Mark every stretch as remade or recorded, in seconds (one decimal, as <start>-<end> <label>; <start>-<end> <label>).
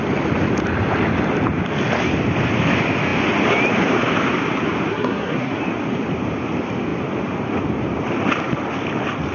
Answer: 0.0-4.9 recorded; 4.9-5.6 remade; 5.6-9.3 recorded